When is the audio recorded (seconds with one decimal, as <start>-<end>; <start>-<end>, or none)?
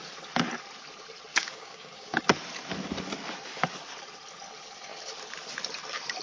0.0-1.3; 2.2-6.2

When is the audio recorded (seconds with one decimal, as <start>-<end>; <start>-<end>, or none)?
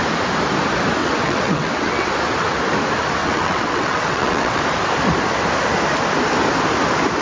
0.0-1.0; 2.1-3.2; 4.6-7.2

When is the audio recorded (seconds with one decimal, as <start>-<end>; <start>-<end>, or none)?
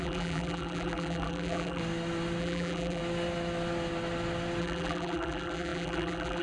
1.8-2.4; 3.0-4.6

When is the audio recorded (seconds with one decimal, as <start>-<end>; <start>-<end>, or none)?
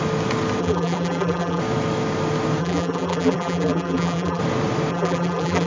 0.0-0.6; 1.6-2.6; 4.4-4.9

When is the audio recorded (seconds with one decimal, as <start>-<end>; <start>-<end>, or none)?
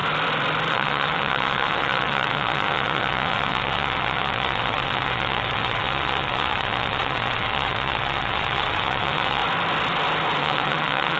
0.0-0.7; 9.4-10.4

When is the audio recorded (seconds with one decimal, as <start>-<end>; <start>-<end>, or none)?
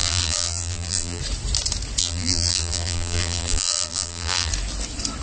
1.2-2.0; 4.5-5.2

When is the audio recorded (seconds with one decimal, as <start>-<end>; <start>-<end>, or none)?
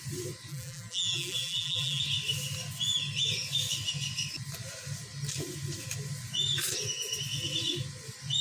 0.0-0.5; 2.0-8.4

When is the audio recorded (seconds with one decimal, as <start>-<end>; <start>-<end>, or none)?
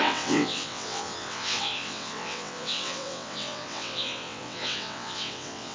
none